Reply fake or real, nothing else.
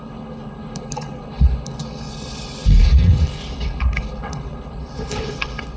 fake